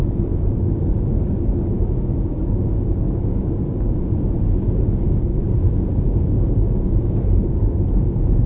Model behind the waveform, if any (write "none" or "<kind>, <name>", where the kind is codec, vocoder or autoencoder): codec, DAC